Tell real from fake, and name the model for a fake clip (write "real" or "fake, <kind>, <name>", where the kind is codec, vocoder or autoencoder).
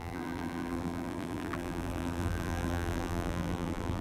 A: fake, vocoder, BigVGAN v2